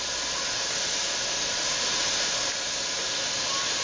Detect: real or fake real